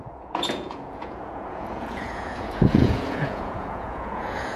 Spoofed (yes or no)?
yes